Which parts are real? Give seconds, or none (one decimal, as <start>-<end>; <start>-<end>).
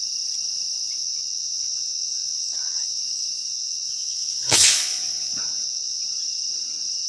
0.0-1.0; 3.0-3.5; 6.0-7.1